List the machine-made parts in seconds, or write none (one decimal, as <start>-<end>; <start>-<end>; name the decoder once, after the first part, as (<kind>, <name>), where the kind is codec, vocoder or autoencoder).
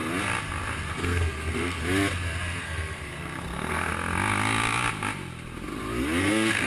0.9-1.8 (codec, SNAC); 2.6-3.9; 6.2-6.7